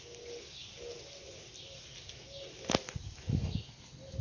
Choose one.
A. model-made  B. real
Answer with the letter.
B